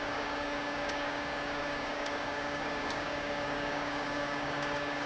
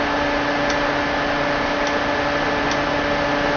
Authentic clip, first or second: second